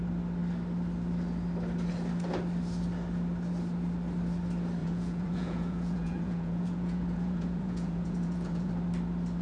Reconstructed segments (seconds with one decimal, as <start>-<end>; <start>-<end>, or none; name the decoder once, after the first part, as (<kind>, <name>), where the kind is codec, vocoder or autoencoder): 4.8-8.7 (vocoder, Vocos)